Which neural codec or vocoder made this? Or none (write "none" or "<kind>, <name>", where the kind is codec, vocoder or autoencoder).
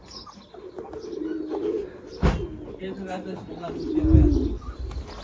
none